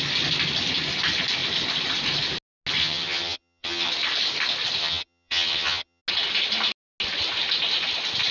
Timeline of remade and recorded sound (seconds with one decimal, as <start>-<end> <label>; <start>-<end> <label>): 0.0-2.8 recorded; 2.8-3.9 remade; 3.9-4.8 recorded; 4.8-6.0 remade; 6.0-8.3 recorded